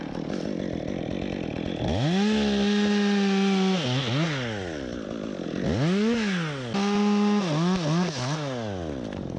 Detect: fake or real real